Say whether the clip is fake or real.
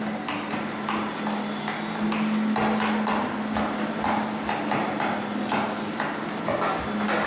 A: real